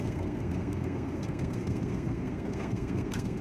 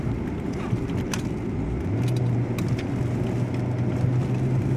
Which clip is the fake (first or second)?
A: first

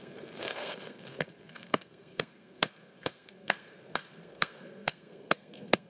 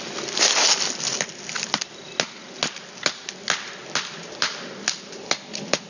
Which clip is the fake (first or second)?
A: first